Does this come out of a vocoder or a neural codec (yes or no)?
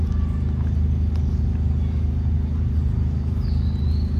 no